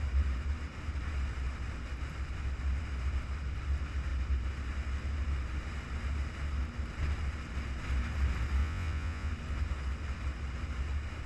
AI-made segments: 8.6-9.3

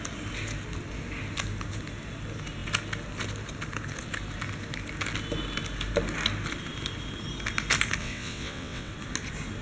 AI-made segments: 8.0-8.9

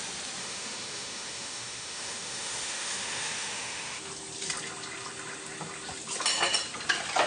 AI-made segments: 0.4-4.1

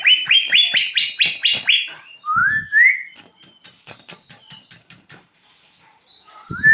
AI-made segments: 0.0-2.4; 3.4-6.7

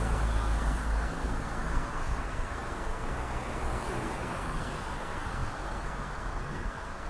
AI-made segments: 0.0-7.1

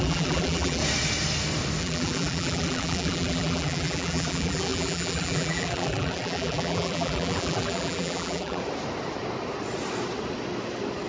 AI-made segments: 0.0-0.8; 1.8-8.6